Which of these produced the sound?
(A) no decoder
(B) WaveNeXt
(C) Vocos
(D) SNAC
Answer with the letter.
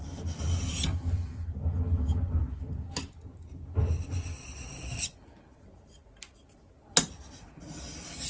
A